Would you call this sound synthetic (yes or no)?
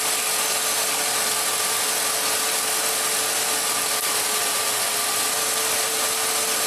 no